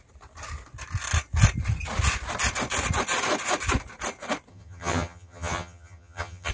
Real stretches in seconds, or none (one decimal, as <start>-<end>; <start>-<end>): 0.0-4.5